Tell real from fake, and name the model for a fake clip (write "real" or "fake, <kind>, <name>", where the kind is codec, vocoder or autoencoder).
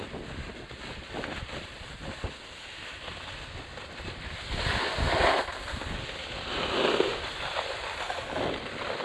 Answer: real